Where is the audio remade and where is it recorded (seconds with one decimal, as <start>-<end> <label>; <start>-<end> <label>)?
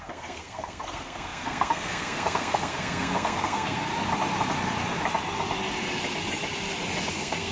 0.0-3.9 remade; 3.9-7.1 recorded; 7.1-7.5 remade